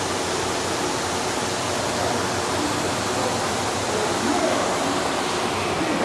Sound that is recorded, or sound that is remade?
remade